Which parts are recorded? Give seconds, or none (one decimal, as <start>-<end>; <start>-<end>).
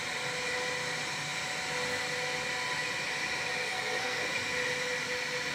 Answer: 0.0-3.6; 4.2-5.5